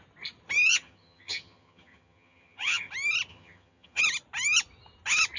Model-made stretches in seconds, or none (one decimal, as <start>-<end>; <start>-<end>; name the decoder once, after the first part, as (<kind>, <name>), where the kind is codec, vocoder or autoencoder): 0.7-2.9 (vocoder, HiFi-GAN); 3.3-4.0